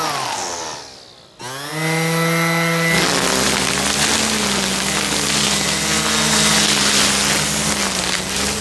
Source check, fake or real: real